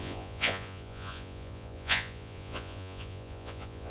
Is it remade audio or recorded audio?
remade